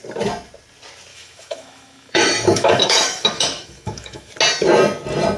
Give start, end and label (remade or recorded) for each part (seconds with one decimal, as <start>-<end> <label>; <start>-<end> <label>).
0.0-1.1 recorded; 1.1-4.3 remade; 4.3-5.4 recorded